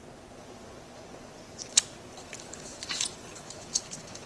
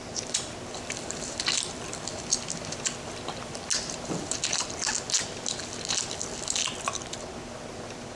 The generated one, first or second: first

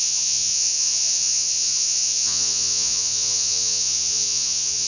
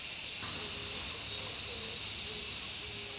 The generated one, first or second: first